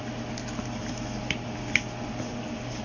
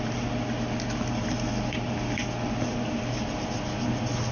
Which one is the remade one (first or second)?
second